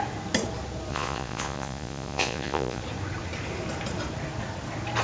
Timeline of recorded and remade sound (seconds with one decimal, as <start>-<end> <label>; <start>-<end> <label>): 0.0-0.9 recorded; 0.9-2.8 remade; 2.8-5.0 recorded